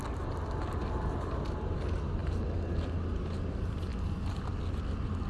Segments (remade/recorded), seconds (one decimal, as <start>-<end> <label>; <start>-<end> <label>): 0.0-5.3 recorded

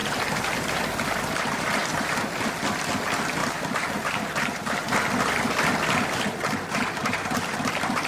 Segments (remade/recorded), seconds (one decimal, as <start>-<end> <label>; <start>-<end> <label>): 0.0-0.7 remade; 0.7-3.4 recorded; 3.4-4.9 remade; 4.9-7.0 recorded; 7.0-8.1 remade